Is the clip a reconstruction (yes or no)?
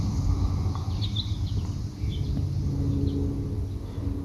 no